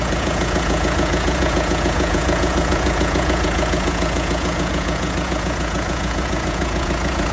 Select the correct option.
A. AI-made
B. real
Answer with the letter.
A